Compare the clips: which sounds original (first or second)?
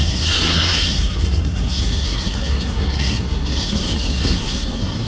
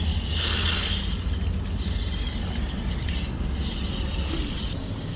second